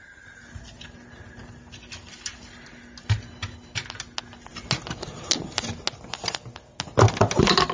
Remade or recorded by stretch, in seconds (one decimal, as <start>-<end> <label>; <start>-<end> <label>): 0.0-7.7 recorded